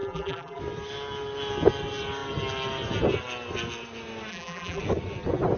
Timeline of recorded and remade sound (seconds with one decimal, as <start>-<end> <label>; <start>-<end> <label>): 0.0-0.6 remade; 0.6-4.3 recorded; 4.3-4.8 remade; 4.8-5.6 recorded